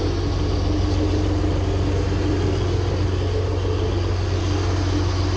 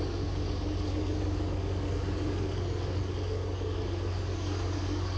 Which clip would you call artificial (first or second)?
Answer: second